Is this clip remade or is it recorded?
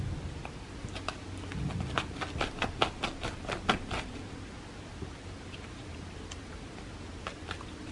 recorded